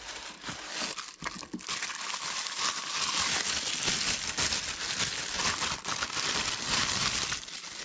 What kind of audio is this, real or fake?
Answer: real